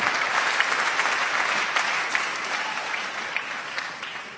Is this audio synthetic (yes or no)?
yes